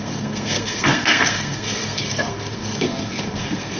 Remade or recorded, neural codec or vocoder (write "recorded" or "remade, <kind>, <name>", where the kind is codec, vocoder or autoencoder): remade, codec, SNAC